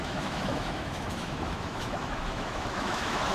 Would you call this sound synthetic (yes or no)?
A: yes